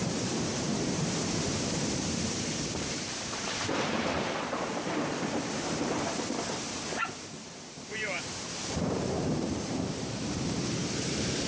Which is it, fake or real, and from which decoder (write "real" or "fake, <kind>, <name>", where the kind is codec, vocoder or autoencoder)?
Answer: fake, vocoder, BigVGAN v2